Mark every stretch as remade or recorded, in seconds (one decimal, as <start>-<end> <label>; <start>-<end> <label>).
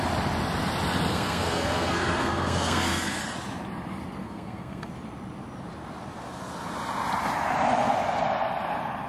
0.0-1.1 recorded; 1.1-3.2 remade; 3.2-4.2 recorded; 4.2-4.9 remade; 4.9-9.1 recorded